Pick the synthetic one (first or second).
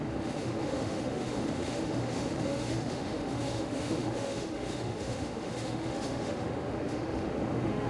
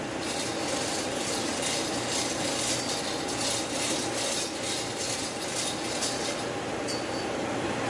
first